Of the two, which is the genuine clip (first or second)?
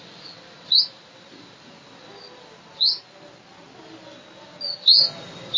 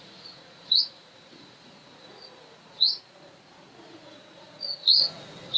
first